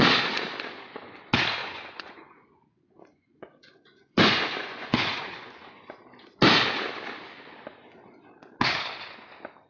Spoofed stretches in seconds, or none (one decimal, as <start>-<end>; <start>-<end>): 1.6-6.0